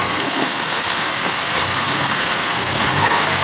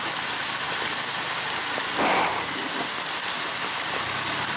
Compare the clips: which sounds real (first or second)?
second